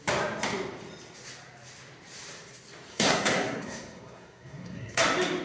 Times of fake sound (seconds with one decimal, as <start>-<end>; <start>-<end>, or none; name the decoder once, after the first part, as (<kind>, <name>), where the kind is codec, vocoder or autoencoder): 2.9-5.0 (codec, SNAC)